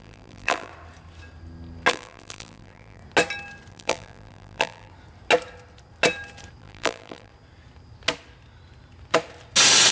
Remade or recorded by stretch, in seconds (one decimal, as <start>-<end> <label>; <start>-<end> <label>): 0.0-0.7 remade; 0.7-1.9 recorded; 1.9-3.0 remade; 3.0-3.7 recorded; 3.7-4.9 remade; 4.9-6.6 recorded; 6.6-7.3 remade; 7.3-9.9 recorded